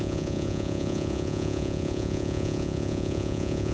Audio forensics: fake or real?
fake